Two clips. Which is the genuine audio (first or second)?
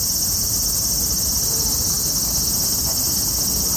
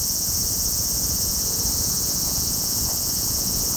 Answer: first